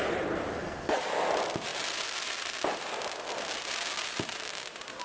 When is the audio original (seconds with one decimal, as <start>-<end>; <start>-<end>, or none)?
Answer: 0.0-0.5; 1.0-5.0